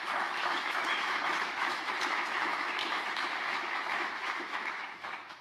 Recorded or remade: remade